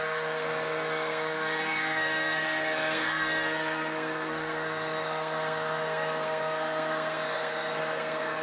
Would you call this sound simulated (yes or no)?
yes